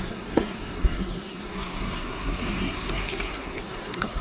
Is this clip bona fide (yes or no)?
no